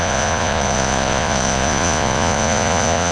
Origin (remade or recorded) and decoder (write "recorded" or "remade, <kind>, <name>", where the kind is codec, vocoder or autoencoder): remade, vocoder, Vocos